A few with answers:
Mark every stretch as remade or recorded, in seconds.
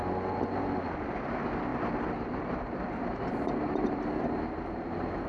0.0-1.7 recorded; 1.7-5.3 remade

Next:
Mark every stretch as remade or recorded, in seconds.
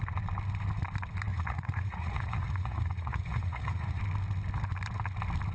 0.0-1.3 recorded; 1.3-4.0 remade; 4.0-5.5 recorded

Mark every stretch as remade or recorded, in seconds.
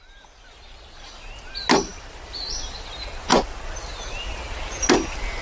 0.0-5.4 recorded